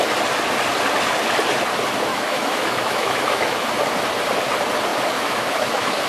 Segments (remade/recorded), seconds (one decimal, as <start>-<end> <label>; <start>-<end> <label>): 0.0-2.1 recorded; 2.1-3.7 remade; 3.7-4.9 recorded; 4.9-6.1 remade